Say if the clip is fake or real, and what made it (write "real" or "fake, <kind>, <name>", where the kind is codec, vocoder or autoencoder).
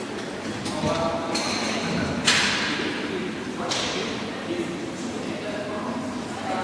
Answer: real